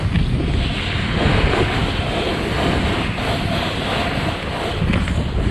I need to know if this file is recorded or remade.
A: recorded